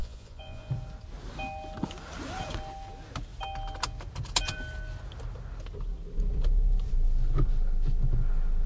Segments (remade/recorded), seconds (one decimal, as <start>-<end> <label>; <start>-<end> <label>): 0.0-0.7 remade; 0.7-8.7 recorded